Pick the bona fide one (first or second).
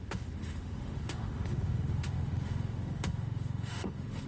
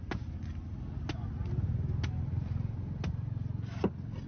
second